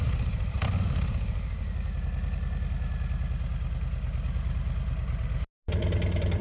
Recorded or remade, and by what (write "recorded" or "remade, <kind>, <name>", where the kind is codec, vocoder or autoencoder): recorded